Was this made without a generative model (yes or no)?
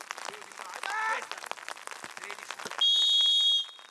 yes